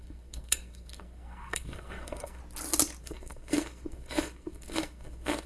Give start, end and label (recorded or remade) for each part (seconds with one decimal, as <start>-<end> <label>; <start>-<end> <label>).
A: 0.0-2.4 remade; 2.4-3.0 recorded; 3.0-5.5 remade